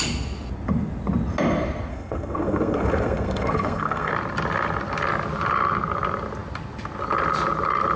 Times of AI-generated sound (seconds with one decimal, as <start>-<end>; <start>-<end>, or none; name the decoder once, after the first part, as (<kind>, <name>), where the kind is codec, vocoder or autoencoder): 1.9-4.1 (codec, SNAC)